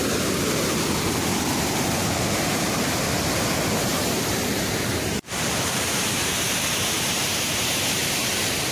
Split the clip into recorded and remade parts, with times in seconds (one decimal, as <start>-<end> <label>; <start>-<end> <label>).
0.0-1.3 recorded; 1.3-2.9 remade; 2.9-3.9 recorded; 3.9-8.2 remade; 8.2-8.7 recorded